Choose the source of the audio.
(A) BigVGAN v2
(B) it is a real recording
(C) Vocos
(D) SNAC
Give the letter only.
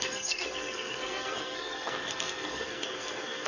D